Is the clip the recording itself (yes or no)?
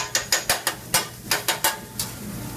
yes